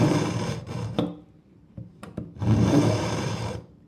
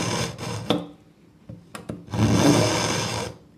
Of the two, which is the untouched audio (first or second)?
second